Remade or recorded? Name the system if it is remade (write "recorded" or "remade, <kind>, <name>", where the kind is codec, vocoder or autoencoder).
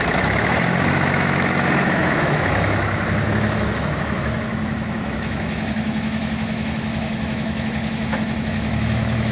remade, autoencoder, DAC-VAE